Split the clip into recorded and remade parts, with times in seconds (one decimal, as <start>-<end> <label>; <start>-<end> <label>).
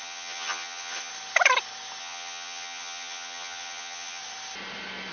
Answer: 0.0-1.1 remade; 1.1-2.0 recorded; 2.0-4.2 remade; 4.2-5.1 recorded